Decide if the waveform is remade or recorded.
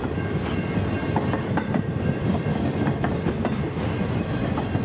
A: remade